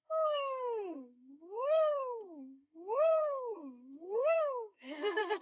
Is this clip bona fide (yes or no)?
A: no